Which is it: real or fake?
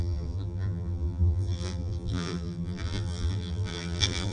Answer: fake